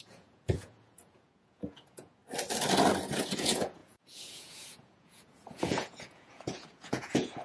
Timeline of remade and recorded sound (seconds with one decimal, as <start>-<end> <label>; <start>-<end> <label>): 0.0-2.2 remade; 2.2-3.1 recorded; 3.1-7.4 remade